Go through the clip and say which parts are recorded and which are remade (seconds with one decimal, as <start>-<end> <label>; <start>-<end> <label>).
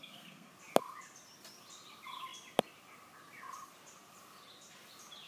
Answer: 0.0-0.5 remade; 0.5-5.3 recorded